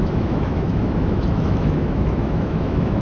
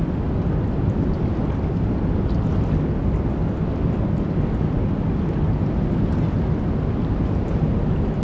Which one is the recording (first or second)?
second